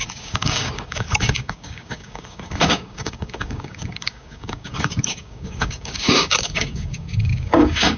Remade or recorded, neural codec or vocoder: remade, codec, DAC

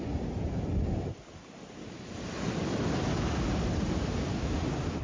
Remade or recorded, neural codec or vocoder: recorded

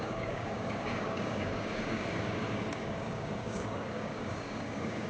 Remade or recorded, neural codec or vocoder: remade, codec, DAC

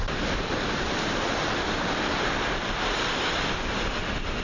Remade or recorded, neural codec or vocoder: recorded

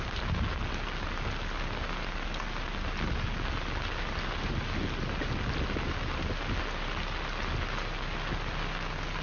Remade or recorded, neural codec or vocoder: recorded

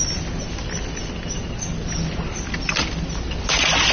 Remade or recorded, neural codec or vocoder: recorded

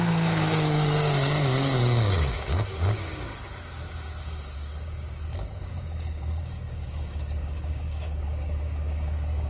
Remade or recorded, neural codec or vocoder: remade, codec, DAC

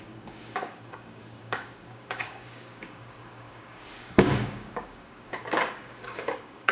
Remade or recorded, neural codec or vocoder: remade, codec, DAC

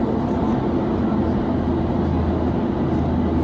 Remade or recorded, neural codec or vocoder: recorded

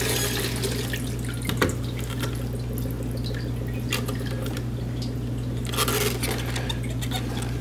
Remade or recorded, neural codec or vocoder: recorded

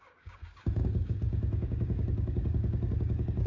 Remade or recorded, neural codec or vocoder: remade, codec, DAC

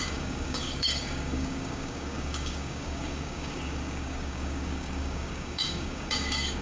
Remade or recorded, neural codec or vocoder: remade, codec, DAC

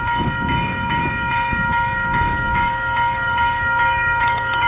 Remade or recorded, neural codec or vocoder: remade, codec, DAC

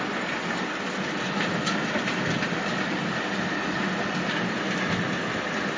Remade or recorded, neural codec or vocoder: recorded